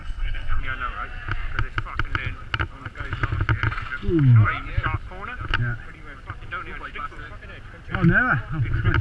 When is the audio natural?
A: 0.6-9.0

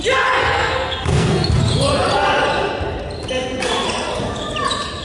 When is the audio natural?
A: 0.0-0.4; 1.5-5.0

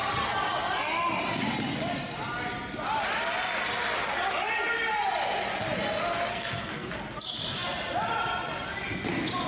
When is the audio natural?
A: 0.0-6.3; 6.9-9.5

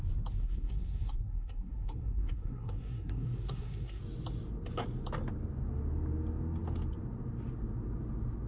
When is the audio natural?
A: 0.0-0.4; 4.0-8.5

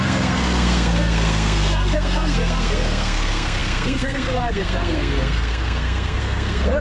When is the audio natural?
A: none

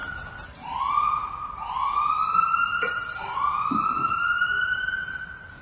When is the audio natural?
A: 0.0-5.6

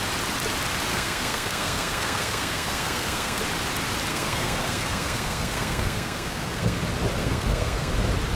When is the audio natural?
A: 0.0-0.9; 3.4-4.1; 6.8-7.2; 7.9-8.4

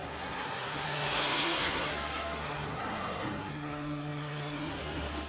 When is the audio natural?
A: none